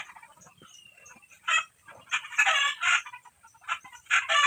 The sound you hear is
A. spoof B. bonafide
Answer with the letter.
A